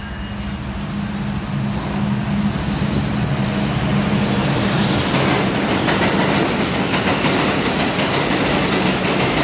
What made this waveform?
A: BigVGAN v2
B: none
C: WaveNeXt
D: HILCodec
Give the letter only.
B